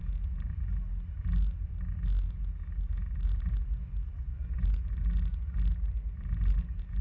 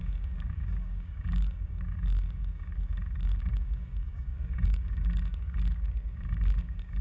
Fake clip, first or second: second